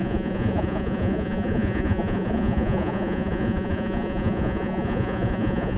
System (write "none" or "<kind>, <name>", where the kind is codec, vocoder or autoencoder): vocoder, Vocos